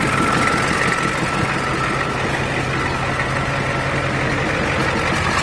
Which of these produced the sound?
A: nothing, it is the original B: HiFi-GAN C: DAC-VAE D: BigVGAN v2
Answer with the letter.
A